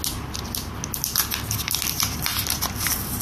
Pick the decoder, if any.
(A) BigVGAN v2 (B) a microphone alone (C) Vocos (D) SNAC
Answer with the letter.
B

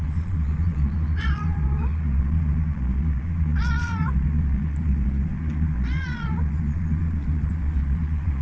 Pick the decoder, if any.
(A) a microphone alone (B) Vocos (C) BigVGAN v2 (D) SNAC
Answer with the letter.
B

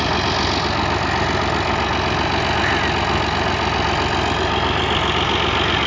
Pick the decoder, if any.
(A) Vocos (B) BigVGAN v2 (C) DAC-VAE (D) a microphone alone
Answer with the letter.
D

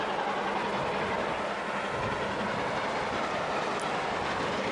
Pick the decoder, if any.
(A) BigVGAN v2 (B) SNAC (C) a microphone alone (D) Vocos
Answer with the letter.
C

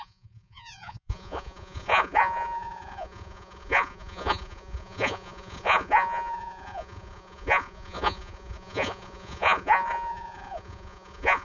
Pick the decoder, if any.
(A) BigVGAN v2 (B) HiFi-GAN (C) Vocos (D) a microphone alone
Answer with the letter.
C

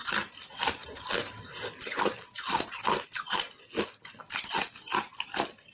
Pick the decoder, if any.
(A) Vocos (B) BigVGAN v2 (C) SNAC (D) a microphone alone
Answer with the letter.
D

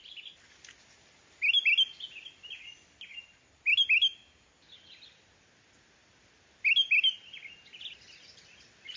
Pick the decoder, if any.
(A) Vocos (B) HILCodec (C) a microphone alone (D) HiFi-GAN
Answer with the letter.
C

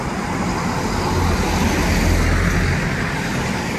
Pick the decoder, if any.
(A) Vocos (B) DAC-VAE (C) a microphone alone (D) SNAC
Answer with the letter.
C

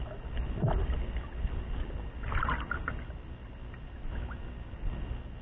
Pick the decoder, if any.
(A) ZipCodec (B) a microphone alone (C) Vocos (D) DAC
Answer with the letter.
B